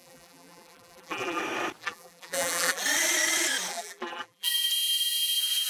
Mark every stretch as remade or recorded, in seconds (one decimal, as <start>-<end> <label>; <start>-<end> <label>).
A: 0.0-1.4 remade; 1.4-1.8 recorded; 1.8-2.8 remade; 2.8-3.7 recorded; 3.7-4.7 remade; 4.7-5.7 recorded